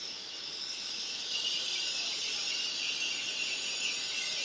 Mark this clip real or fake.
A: real